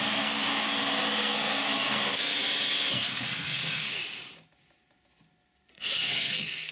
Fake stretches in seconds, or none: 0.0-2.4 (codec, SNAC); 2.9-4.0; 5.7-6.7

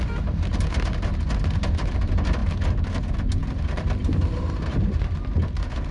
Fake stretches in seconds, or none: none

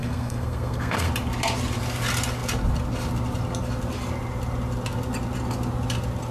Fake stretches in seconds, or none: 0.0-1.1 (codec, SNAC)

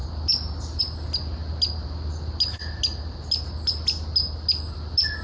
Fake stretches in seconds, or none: none

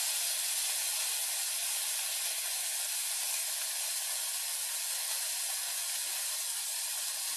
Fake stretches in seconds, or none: none

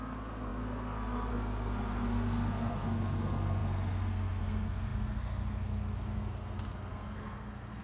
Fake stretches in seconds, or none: 0.0-7.8 (codec, SNAC)

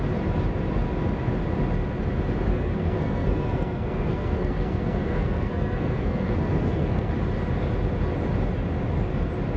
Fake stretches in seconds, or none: 2.5-7.1 (codec, SNAC)

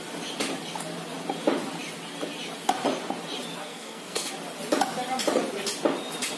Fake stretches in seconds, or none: 3.6-4.3 (codec, SNAC)